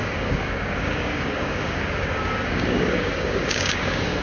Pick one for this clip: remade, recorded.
remade